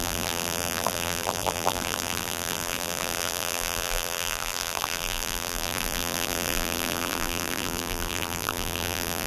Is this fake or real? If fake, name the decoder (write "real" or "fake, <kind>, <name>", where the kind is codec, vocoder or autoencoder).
fake, vocoder, BigVGAN v2